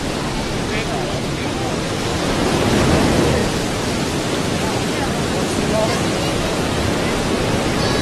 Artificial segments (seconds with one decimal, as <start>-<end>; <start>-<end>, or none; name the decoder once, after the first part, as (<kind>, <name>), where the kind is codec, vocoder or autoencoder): 2.1-2.9 (vocoder, BigVGAN v2); 3.4-8.0